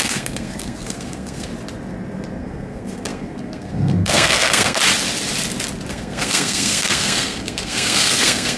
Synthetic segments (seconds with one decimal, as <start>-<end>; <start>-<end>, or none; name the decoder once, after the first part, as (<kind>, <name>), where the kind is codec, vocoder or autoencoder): 0.0-1.5 (codec, SNAC); 2.4-4.8; 5.9-8.6